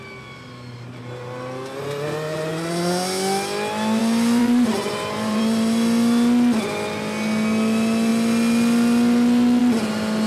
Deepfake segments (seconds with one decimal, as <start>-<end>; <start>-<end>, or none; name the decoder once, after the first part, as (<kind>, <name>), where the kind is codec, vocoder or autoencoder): 4.4-5.4 (vocoder, BigVGAN v2)